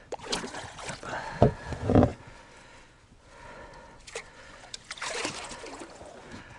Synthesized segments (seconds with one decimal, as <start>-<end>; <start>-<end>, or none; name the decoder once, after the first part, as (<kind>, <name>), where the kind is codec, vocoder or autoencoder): 0.0-6.6 (vocoder, Vocos)